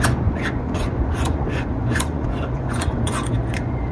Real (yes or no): no